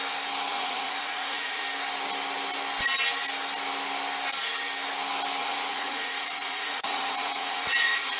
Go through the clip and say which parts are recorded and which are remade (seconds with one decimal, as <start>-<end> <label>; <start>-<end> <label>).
0.0-0.5 recorded; 0.5-1.6 remade; 1.6-5.4 recorded; 5.4-8.2 remade